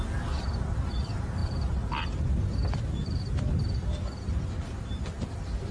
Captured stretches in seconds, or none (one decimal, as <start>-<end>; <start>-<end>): 0.0-5.7